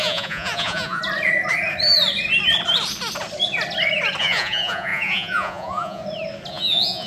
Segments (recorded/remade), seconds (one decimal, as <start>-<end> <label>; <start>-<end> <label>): 0.0-1.0 remade; 1.0-4.2 recorded; 4.2-6.0 remade; 6.0-6.5 recorded; 6.5-7.1 remade